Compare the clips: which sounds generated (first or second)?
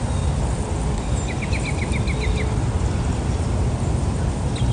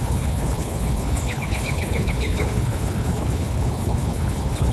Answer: second